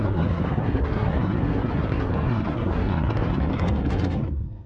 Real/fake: fake